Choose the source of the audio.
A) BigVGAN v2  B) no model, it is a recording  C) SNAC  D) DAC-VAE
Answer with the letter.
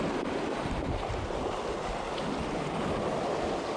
B